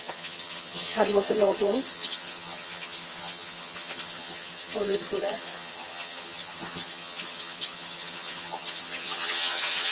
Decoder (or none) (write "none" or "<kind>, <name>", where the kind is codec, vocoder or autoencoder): vocoder, HiFi-GAN